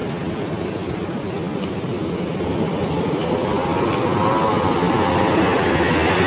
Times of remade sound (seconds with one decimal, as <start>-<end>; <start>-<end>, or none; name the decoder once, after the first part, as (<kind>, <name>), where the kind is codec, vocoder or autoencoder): none